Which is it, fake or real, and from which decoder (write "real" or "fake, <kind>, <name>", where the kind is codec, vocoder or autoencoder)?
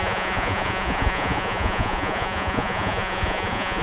fake, vocoder, Vocos